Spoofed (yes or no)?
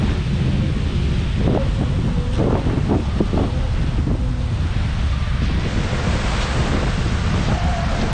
no